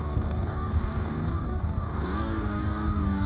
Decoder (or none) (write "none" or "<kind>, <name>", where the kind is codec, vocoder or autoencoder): codec, DAC